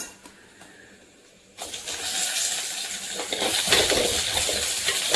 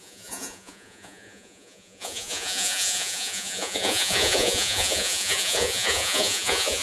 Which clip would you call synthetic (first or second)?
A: second